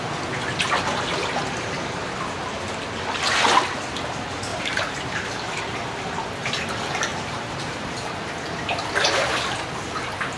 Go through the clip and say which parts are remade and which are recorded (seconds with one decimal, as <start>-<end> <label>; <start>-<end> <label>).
0.0-4.5 recorded; 4.5-5.6 remade; 5.6-7.1 recorded; 7.1-8.1 remade; 8.1-10.4 recorded

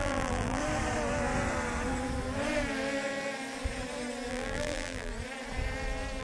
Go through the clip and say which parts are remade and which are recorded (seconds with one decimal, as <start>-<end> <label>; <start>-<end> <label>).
0.0-0.6 remade; 0.6-4.3 recorded; 4.3-5.1 remade; 5.1-6.2 recorded

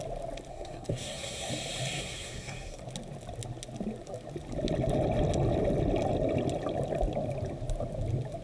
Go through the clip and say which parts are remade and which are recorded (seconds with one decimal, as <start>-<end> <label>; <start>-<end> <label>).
0.0-0.5 recorded; 0.5-1.5 remade; 1.5-2.0 recorded; 2.0-2.8 remade; 2.8-8.4 recorded

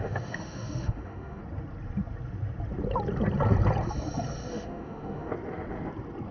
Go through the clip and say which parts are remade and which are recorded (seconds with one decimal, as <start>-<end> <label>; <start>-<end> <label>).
0.0-1.4 remade; 1.4-4.5 recorded; 4.5-5.3 remade; 5.3-6.3 recorded

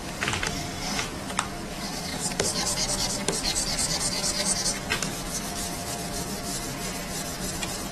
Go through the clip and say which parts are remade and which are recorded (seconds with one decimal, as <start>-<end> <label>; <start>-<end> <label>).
0.0-6.5 remade; 6.5-7.9 recorded

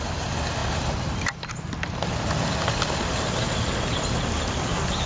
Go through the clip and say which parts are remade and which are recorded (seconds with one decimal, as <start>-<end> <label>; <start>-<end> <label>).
0.0-5.1 recorded

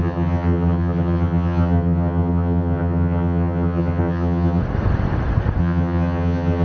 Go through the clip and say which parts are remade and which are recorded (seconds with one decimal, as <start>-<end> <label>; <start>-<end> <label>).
0.0-4.6 remade; 4.6-5.6 recorded; 5.6-6.6 remade